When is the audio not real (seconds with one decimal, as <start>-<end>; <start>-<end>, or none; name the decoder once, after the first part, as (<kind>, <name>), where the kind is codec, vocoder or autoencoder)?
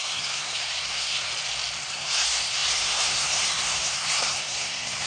0.0-1.3 (codec, SNAC); 1.9-5.1